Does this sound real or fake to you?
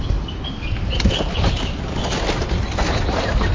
real